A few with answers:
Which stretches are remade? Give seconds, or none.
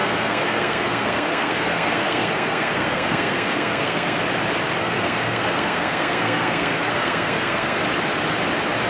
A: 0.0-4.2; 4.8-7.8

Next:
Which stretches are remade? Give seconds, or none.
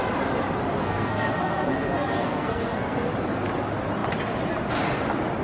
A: 0.8-3.1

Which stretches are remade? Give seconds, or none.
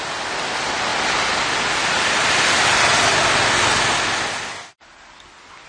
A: none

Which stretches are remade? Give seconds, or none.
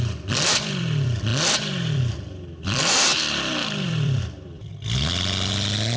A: 0.0-4.7; 5.5-6.0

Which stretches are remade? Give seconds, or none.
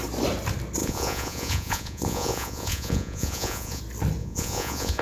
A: 0.8-3.8; 4.2-5.0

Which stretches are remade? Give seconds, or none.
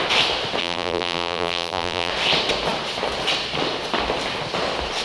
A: 0.6-2.1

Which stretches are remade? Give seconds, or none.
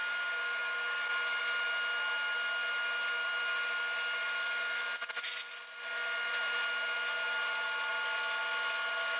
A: none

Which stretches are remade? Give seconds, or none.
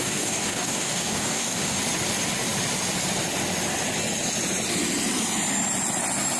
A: 0.0-1.8